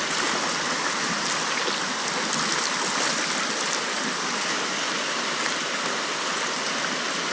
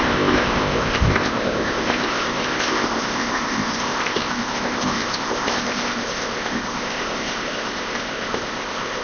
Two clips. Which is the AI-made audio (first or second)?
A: second